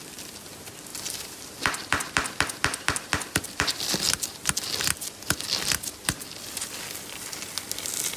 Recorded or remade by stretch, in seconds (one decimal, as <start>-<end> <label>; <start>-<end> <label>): 0.0-0.9 recorded; 0.9-4.7 remade; 4.7-8.2 recorded